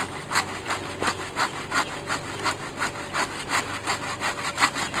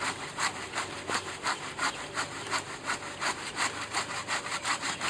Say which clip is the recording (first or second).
first